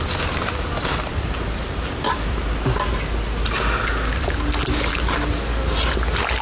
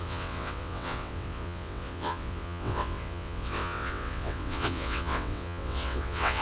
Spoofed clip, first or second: second